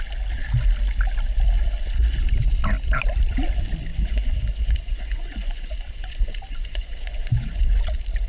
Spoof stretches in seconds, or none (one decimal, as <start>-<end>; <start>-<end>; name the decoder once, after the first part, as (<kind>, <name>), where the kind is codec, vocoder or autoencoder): 3.9-7.8 (vocoder, Vocos)